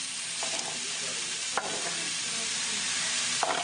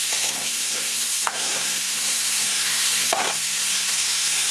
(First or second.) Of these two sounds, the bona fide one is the first